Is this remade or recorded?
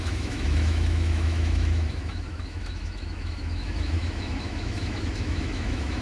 remade